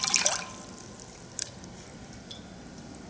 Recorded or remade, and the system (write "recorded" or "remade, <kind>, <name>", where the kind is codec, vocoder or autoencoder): recorded